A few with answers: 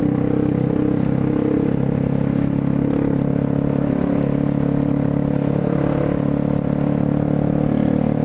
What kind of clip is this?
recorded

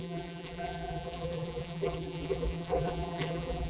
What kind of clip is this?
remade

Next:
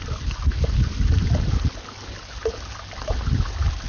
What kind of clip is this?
recorded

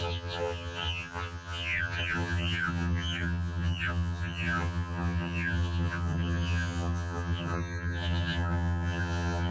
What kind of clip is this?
remade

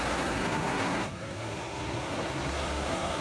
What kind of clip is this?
remade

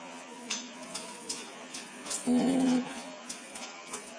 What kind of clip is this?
remade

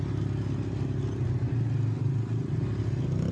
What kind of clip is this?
recorded